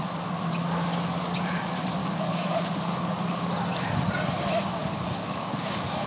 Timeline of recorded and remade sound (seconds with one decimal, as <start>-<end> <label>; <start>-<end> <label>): 0.0-2.0 recorded; 2.0-3.4 remade; 3.4-4.8 recorded; 4.8-6.1 remade